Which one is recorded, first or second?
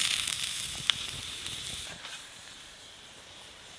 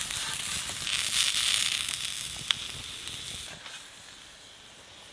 second